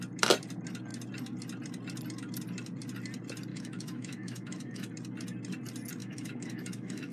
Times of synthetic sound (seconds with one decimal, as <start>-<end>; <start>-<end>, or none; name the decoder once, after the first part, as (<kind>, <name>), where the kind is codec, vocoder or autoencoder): 3.5-4.9 (autoencoder, DAC-VAE); 6.0-7.1